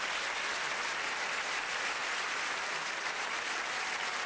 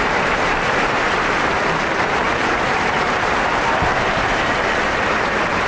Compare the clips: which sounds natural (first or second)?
first